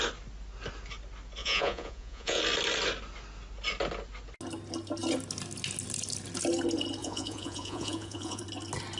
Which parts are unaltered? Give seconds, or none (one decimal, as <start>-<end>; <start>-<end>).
0.0-1.4; 2.4-7.0; 8.4-9.0